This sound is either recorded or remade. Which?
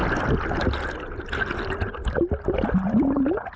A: recorded